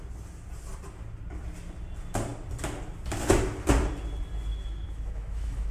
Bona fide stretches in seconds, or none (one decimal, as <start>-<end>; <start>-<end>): 0.0-4.5